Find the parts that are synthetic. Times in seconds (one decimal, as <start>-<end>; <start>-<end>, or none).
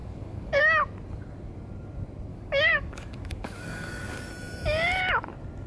0.0-0.6; 2.3-4.3